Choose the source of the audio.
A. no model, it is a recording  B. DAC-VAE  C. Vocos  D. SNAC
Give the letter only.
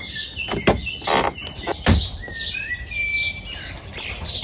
A